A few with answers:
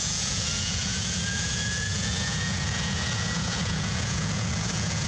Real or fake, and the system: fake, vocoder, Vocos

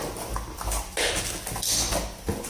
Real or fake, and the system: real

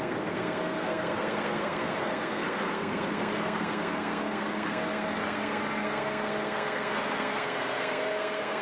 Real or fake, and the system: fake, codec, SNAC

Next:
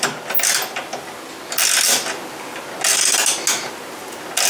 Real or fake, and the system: real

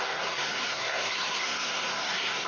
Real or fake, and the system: fake, codec, SNAC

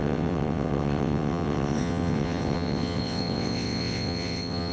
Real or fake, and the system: fake, vocoder, WaveNeXt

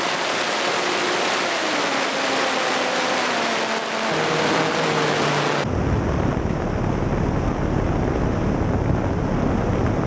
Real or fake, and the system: real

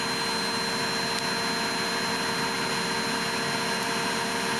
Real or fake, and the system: real